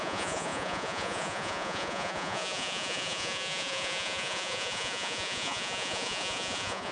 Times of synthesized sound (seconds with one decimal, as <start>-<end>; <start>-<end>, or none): 0.0-6.9